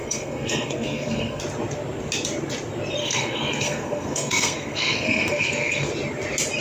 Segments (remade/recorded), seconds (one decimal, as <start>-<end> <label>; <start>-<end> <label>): 0.0-1.4 remade; 1.4-3.0 recorded; 3.0-5.9 remade; 5.9-6.6 recorded